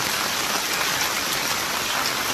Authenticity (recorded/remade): recorded